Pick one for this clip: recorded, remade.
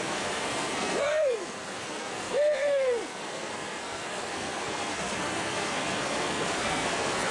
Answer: remade